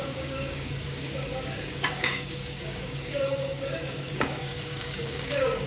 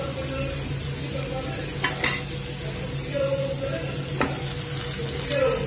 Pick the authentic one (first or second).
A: second